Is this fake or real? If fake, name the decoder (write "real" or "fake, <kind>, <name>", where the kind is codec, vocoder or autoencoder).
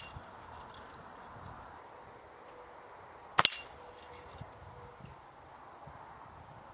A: real